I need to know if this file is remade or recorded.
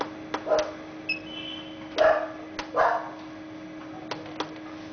recorded